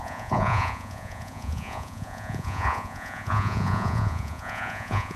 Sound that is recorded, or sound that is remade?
remade